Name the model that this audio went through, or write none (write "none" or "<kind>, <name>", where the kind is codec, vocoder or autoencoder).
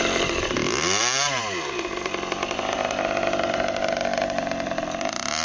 vocoder, BigVGAN v2